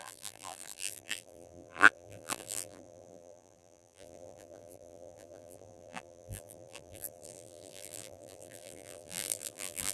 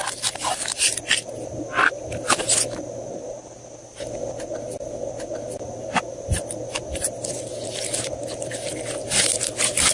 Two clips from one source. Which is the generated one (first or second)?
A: first